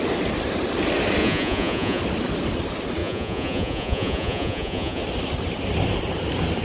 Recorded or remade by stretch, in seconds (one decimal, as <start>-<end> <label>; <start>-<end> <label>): 0.0-1.2 recorded; 1.2-2.0 remade; 2.0-3.0 recorded; 3.0-5.0 remade; 5.0-6.6 recorded